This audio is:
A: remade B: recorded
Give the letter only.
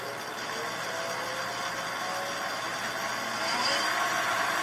B